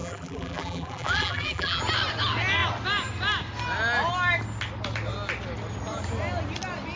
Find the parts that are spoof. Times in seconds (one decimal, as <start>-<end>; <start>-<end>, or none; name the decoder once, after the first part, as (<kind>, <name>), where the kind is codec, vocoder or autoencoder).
0.0-1.8 (vocoder, BigVGAN v2)